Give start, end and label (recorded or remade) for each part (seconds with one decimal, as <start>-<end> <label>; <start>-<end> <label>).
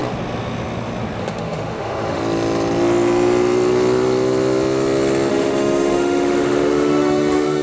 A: 0.0-1.2 recorded; 1.2-2.2 remade; 2.2-5.3 recorded; 5.3-7.6 remade